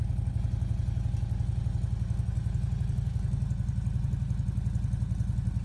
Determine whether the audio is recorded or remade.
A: recorded